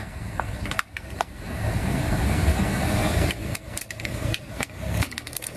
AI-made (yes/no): yes